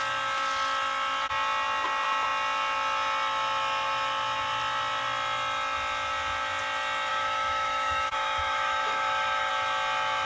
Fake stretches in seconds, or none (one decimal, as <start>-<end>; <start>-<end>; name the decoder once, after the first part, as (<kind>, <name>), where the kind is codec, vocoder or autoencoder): 7.1-9.5 (autoencoder, DAC-VAE)